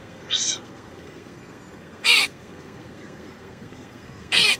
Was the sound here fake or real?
fake